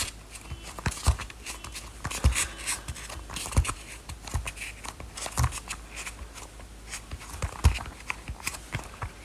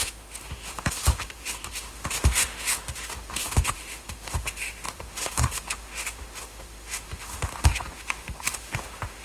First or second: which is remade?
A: second